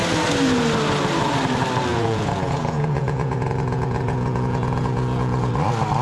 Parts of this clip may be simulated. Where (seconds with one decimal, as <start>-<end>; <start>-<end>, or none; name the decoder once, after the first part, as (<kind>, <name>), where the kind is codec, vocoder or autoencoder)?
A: 1.9-5.5 (vocoder, Vocos)